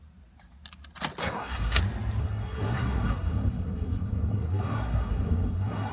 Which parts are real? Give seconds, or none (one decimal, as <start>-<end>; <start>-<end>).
0.0-1.2; 1.8-2.2